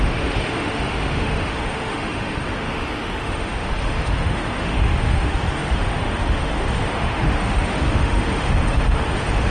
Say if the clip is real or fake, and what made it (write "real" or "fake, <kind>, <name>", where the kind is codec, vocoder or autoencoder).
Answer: fake, autoencoder, DAC-VAE